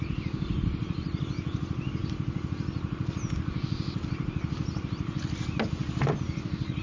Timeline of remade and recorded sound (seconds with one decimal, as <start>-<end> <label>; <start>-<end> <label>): 0.0-6.8 recorded